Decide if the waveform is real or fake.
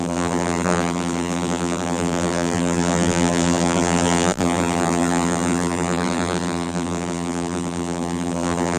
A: fake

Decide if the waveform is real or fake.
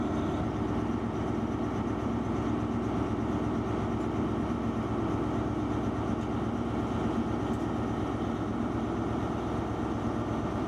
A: real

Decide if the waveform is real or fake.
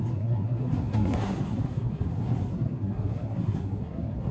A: fake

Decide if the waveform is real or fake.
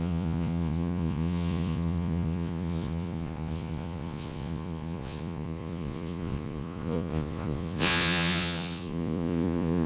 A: fake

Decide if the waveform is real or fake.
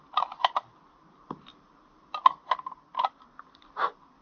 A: real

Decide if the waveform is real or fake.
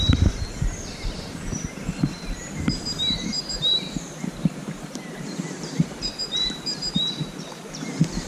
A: fake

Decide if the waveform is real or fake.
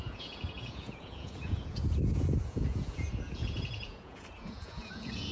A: fake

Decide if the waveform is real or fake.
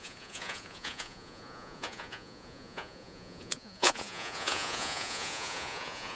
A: fake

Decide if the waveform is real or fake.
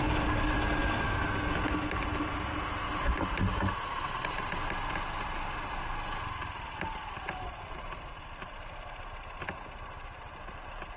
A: real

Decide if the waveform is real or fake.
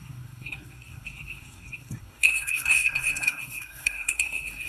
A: fake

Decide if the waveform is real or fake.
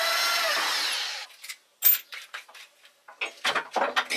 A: real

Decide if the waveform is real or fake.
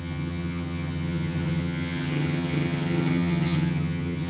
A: fake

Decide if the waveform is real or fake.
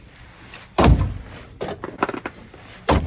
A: fake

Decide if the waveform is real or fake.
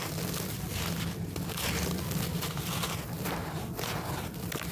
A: fake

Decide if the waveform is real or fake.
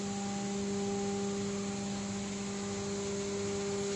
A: real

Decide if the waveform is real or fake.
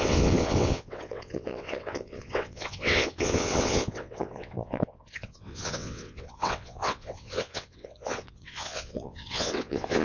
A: fake